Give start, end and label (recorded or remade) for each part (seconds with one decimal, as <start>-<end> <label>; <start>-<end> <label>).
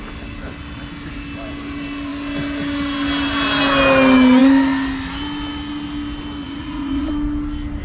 0.0-6.4 recorded; 6.4-7.1 remade; 7.1-7.8 recorded